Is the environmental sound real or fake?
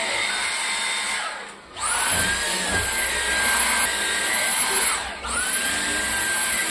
real